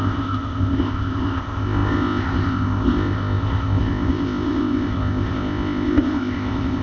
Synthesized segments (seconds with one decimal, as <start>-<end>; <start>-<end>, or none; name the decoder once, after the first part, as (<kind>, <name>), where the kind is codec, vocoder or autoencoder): 0.0-6.8 (codec, ZipCodec)

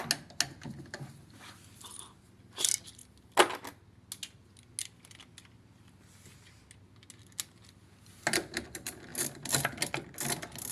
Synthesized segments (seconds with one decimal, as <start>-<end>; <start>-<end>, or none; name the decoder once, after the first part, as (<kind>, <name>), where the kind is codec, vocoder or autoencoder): none

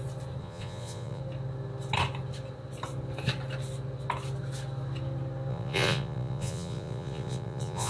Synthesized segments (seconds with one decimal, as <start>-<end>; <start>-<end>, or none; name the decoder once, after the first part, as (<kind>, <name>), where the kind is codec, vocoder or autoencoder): 0.4-1.2 (vocoder, Vocos); 5.5-7.9